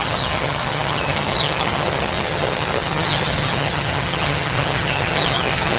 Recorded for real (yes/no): no